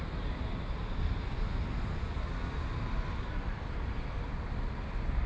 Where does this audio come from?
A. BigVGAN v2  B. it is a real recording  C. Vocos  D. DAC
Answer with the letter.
B